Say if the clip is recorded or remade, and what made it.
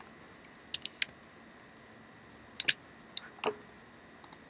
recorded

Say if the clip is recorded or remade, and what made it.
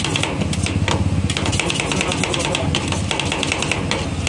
recorded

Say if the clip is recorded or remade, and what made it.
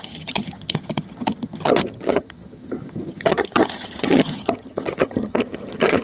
remade, vocoder, HiFi-GAN